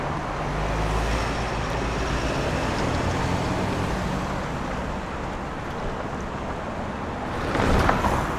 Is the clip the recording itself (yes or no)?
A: yes